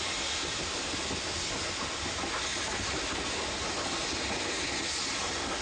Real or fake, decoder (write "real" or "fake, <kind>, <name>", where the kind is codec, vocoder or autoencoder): real